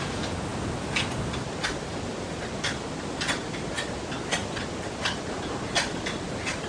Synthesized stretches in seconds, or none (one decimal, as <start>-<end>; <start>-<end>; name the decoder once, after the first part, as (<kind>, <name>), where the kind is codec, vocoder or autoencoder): none